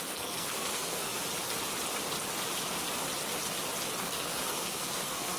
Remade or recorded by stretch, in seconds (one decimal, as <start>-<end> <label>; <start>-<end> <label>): 0.0-1.1 remade; 1.1-4.0 recorded; 4.0-5.4 remade